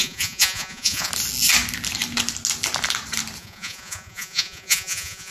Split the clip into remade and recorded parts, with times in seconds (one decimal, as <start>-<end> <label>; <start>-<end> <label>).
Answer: 0.0-1.1 remade; 1.1-3.4 recorded; 3.4-5.3 remade